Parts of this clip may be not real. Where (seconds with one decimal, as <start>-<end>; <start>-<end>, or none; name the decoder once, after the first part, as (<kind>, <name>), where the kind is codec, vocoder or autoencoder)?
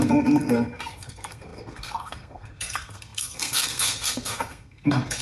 0.0-5.2 (codec, SNAC)